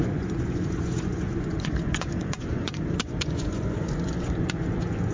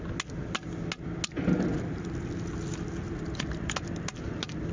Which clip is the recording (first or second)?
second